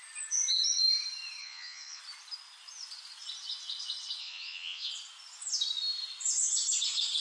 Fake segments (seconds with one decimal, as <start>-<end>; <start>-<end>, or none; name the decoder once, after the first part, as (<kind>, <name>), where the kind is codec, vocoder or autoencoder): 1.4-2.0 (vocoder, Vocos); 4.2-4.9